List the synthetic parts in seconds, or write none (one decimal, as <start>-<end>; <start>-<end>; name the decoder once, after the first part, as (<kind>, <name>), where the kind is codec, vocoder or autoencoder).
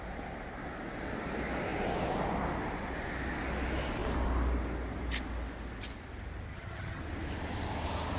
6.5-7.0 (vocoder, HiFi-GAN)